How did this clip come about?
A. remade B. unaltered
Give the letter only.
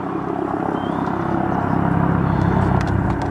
B